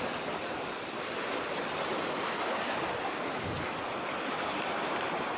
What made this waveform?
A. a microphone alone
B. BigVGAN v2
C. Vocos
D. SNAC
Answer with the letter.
A